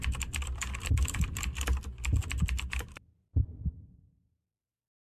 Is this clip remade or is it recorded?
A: remade